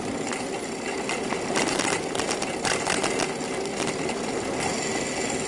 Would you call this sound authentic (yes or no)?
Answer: yes